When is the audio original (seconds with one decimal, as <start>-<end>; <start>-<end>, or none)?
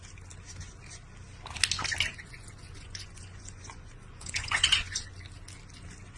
0.0-2.1; 5.1-6.2